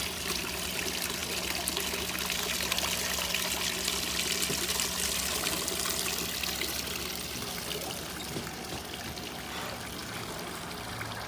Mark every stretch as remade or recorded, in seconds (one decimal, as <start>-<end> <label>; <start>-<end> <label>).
0.0-11.3 recorded

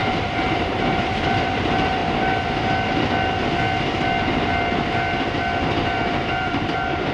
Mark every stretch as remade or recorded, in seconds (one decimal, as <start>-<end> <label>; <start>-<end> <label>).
0.0-2.0 remade; 2.0-6.3 recorded; 6.3-7.1 remade